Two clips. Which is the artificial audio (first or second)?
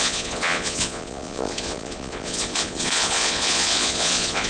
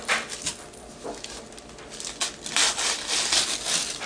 first